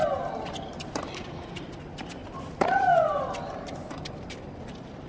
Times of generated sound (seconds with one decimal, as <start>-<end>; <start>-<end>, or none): none